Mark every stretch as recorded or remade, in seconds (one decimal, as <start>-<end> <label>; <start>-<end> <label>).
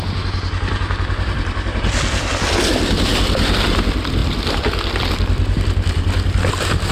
0.0-3.1 recorded; 3.1-3.6 remade; 3.6-4.2 recorded; 4.2-5.1 remade; 5.1-6.9 recorded